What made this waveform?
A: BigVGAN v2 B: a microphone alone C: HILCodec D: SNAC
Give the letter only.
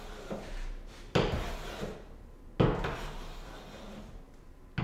B